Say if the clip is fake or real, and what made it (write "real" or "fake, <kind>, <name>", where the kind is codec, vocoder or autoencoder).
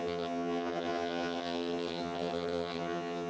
fake, vocoder, HiFi-GAN